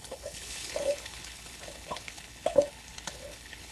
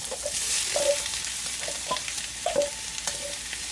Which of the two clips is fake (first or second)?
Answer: first